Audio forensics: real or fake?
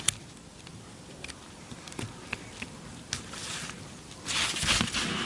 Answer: fake